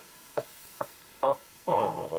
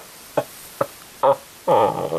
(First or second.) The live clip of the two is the second